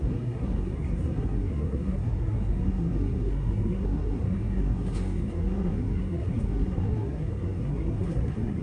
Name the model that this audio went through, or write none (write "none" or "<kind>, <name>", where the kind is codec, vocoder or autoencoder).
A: codec, SNAC